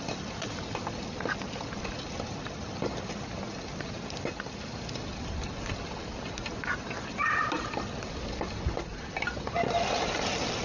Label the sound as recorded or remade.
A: recorded